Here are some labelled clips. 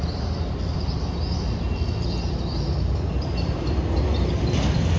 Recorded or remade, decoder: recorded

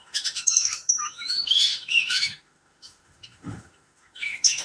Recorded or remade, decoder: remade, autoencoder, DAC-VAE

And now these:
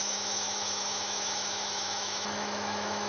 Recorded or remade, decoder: remade, autoencoder, DAC-VAE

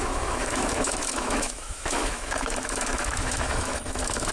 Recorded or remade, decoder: remade, autoencoder, DAC-VAE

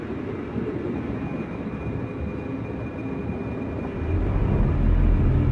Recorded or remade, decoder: recorded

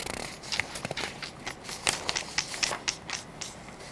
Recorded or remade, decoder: recorded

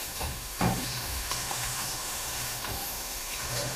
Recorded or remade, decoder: remade, autoencoder, DAC-VAE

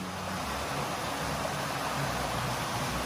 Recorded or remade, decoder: recorded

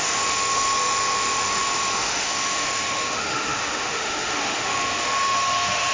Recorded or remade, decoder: remade, autoencoder, DAC-VAE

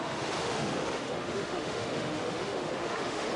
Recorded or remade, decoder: remade, autoencoder, DAC-VAE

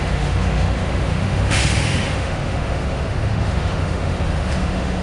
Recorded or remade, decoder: remade, autoencoder, DAC-VAE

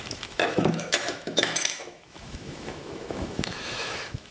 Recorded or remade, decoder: remade, autoencoder, DAC-VAE